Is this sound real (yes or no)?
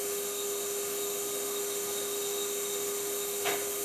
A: no